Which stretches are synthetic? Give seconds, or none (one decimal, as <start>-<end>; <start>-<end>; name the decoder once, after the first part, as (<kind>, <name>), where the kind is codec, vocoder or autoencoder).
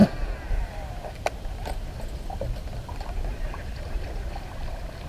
0.0-5.1 (vocoder, BigVGAN v2)